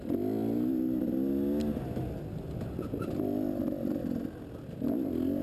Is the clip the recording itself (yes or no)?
yes